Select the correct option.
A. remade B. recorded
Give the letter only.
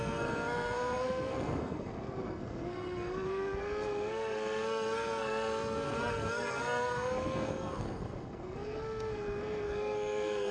A